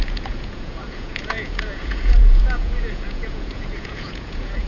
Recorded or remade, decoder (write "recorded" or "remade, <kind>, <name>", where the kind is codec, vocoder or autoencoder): remade, vocoder, Vocos